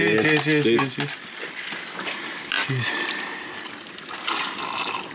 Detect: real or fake real